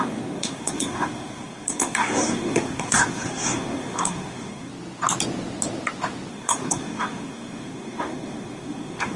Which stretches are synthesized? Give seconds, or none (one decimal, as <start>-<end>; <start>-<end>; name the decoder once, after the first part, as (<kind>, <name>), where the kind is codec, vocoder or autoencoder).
0.0-4.7 (codec, SNAC); 6.3-9.2